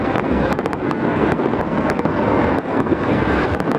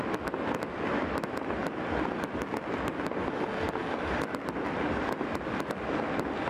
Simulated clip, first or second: first